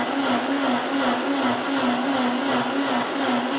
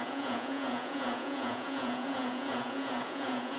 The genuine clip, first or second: first